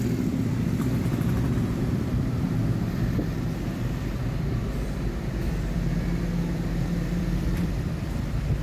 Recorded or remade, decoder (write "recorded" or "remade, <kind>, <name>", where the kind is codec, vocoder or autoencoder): remade, vocoder, BigVGAN v2